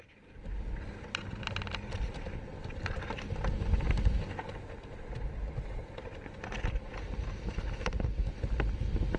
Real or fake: real